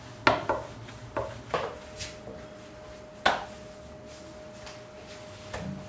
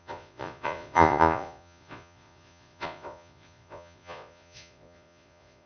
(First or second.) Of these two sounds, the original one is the first